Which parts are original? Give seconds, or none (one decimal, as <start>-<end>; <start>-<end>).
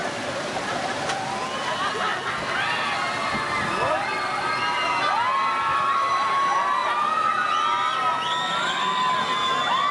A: 0.6-5.7; 6.3-9.9